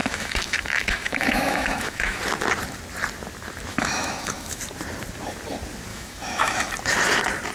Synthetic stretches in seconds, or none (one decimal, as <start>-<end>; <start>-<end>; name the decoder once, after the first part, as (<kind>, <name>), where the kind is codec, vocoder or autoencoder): 0.0-2.2 (autoencoder, DAC-VAE); 3.7-4.6; 5.9-6.7